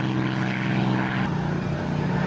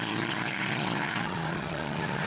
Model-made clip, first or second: second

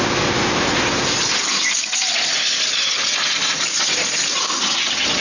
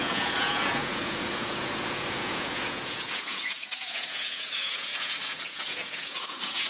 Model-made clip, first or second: second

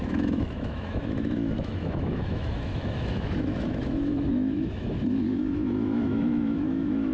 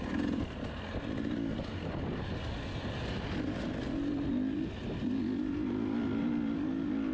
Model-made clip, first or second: first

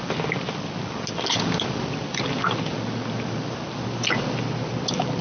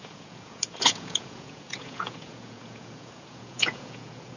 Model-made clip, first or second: second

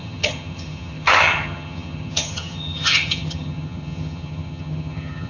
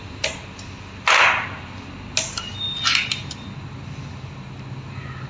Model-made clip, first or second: first